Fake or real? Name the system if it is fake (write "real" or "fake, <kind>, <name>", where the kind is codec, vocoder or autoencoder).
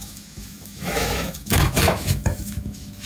fake, autoencoder, DAC-VAE